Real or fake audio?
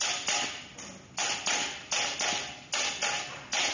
real